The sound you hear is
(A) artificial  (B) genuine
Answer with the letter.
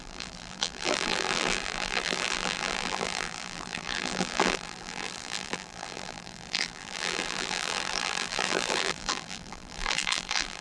A